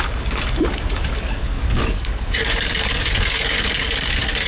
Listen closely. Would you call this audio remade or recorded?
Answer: remade